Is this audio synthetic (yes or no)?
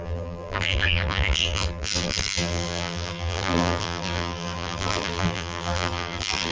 yes